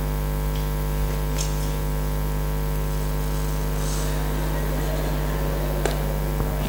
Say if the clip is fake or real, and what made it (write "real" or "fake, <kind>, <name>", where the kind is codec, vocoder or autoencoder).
real